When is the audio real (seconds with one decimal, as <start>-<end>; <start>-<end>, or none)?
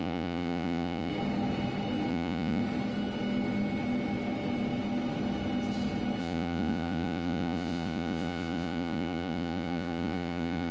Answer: 1.1-2.1; 2.6-6.2